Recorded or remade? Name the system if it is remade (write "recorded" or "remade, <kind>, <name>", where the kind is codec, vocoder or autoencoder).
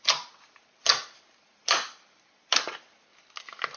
recorded